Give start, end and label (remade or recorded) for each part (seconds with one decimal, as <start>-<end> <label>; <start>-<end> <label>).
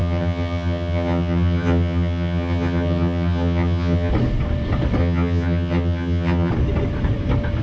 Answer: 0.0-4.1 remade; 4.1-5.0 recorded; 5.0-6.5 remade; 6.5-7.6 recorded